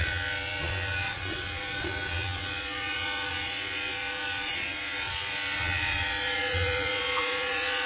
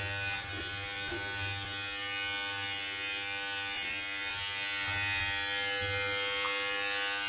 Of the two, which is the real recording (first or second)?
second